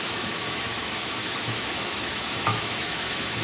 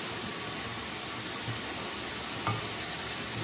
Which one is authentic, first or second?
second